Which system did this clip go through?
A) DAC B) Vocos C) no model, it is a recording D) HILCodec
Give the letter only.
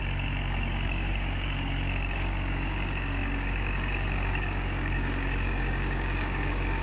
A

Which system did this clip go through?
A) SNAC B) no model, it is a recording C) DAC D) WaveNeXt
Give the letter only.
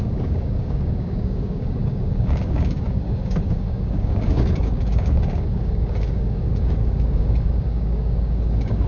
C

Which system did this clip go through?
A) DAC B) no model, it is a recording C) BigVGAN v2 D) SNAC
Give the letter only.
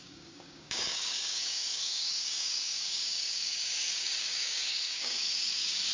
A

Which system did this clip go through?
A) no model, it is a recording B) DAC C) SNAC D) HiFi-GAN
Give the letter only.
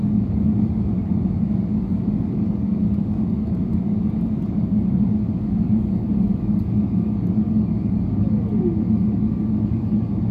B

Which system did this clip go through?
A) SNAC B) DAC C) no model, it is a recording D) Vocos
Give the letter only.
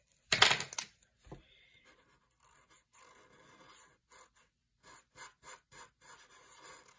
C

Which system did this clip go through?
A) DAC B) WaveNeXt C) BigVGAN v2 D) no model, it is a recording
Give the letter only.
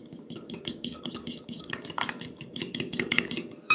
A